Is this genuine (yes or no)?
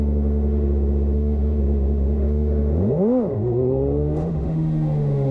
no